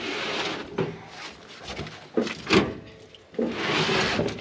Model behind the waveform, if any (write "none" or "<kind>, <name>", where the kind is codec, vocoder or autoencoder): none